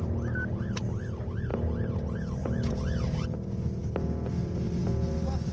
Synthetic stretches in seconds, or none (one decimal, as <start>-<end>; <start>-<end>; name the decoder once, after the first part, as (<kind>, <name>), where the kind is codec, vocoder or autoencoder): none